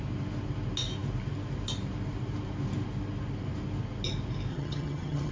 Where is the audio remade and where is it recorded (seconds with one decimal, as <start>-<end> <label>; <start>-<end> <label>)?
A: 0.0-4.5 recorded; 4.5-5.3 remade